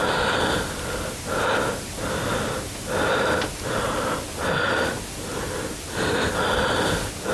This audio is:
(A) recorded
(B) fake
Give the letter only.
A